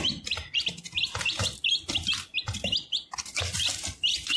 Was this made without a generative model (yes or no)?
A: yes